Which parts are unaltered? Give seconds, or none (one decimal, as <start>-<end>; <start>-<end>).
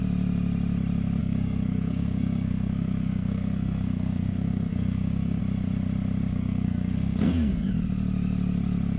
0.0-1.2; 5.4-6.3; 7.7-9.0